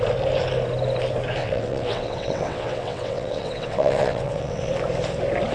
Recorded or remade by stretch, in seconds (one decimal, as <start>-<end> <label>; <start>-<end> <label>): 0.0-1.4 recorded; 1.4-4.7 remade; 4.7-5.5 recorded